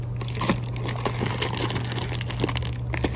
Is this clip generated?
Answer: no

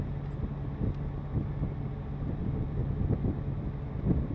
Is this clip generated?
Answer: no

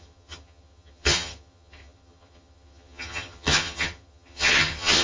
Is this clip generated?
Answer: yes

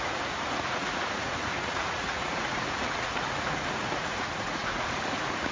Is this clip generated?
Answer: yes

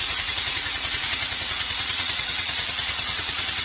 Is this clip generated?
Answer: yes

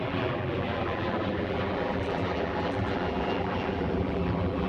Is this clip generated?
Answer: yes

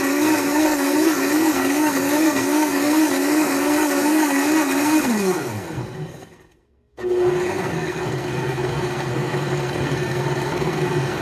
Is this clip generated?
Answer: yes